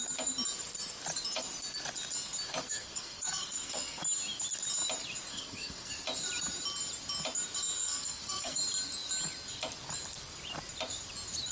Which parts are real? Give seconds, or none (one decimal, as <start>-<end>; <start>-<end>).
0.0-2.6; 4.0-5.3; 5.9-7.8; 8.6-11.5